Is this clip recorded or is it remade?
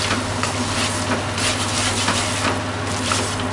recorded